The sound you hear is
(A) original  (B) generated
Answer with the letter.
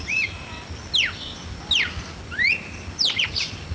A